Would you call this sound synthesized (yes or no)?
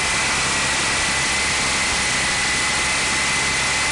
no